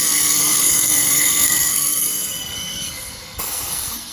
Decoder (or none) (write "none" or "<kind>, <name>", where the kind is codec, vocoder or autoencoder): codec, SNAC